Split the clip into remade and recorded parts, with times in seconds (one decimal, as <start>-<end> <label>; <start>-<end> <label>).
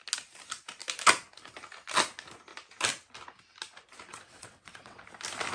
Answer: 0.0-4.1 recorded; 4.1-5.0 remade; 5.0-5.5 recorded